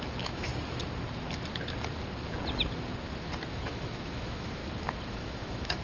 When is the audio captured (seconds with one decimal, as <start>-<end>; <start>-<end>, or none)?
0.5-3.5; 4.6-5.1